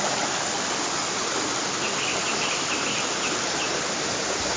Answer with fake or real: real